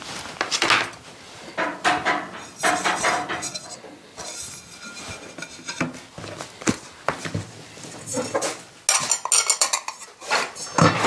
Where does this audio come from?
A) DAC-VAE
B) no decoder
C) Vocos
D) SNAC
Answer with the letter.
B